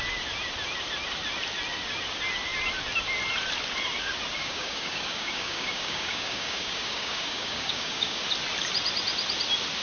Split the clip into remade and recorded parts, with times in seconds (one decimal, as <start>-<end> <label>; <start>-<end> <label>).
0.0-4.4 recorded; 4.4-8.2 remade; 8.2-9.8 recorded